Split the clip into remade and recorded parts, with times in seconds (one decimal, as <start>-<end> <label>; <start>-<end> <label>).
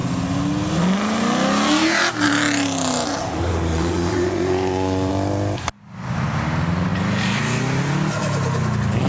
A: 0.0-3.7 recorded; 3.7-5.1 remade; 5.1-9.1 recorded